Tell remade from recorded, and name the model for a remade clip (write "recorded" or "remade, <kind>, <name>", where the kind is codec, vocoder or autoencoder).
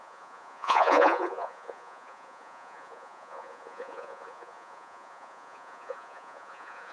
remade, vocoder, Vocos